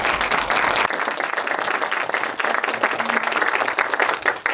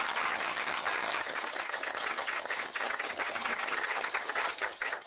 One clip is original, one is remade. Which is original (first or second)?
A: first